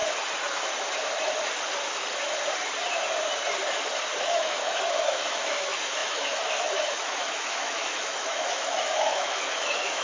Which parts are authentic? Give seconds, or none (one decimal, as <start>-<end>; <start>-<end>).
0.0-4.2